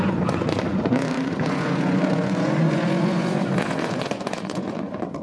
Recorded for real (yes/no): no